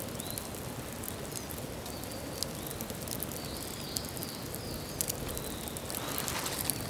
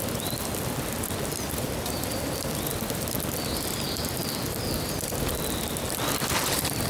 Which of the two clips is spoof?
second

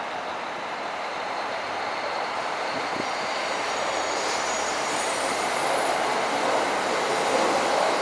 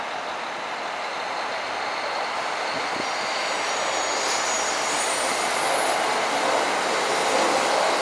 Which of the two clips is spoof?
first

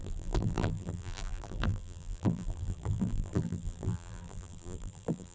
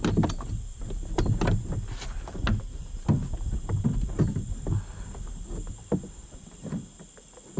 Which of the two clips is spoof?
first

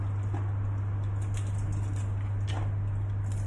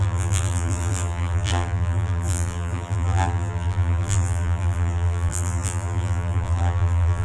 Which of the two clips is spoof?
second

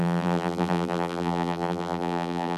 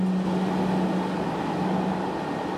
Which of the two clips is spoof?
first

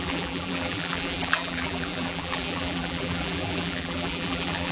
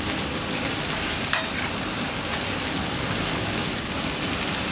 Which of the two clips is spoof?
first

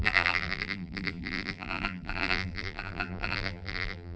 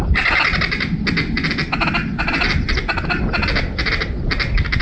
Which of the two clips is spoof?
first